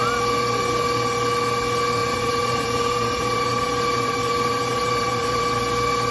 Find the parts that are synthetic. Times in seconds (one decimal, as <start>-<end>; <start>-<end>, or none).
2.0-5.4